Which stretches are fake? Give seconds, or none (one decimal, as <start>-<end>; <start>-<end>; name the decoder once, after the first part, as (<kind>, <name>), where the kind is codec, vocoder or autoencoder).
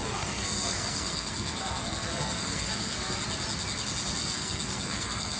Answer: 0.0-3.2 (codec, SNAC); 4.2-5.4